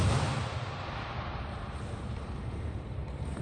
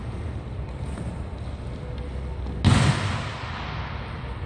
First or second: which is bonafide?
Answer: second